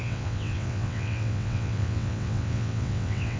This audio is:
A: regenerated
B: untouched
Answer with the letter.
A